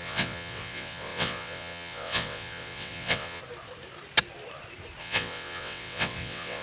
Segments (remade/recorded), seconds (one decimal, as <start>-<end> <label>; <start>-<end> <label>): 0.0-3.4 remade; 3.4-5.0 recorded; 5.0-6.6 remade